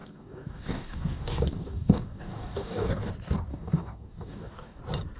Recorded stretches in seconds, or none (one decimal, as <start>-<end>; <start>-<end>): 3.1-3.5; 4.8-5.2